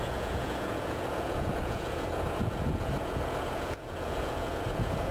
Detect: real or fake fake